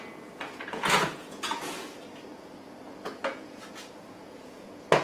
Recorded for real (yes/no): no